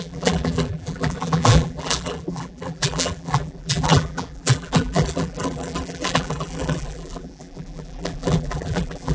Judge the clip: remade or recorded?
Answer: remade